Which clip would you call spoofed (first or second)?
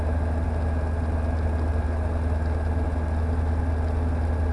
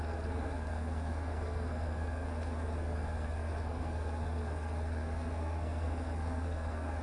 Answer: second